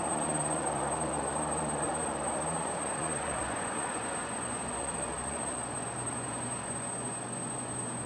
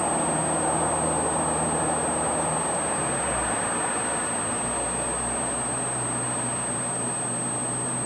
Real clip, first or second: second